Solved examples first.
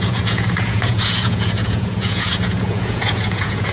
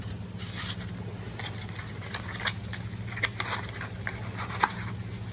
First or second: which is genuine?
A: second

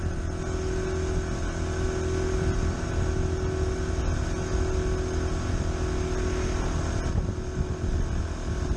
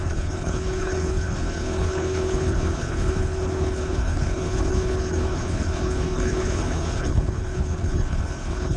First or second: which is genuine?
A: first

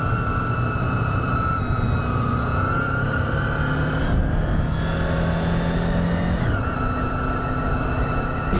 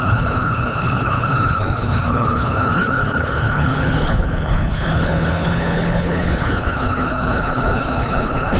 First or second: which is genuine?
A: first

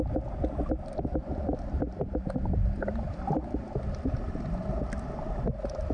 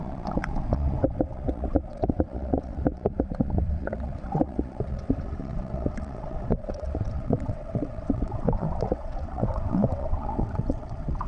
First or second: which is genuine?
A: first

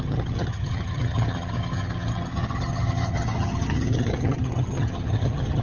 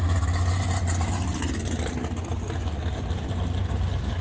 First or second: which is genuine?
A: second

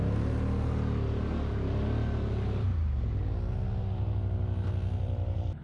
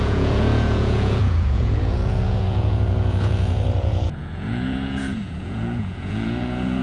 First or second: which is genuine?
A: first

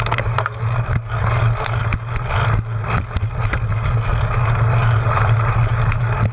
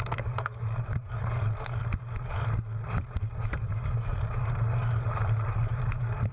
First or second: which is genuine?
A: first